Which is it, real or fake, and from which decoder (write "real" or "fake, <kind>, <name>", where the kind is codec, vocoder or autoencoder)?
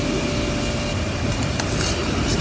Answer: real